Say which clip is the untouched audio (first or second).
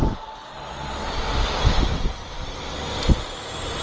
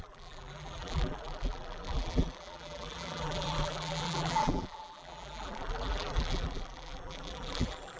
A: first